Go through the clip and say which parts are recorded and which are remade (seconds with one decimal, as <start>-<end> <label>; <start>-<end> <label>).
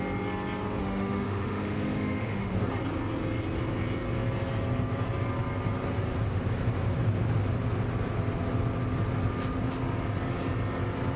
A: 0.0-0.8 recorded; 0.8-2.5 remade; 2.5-11.2 recorded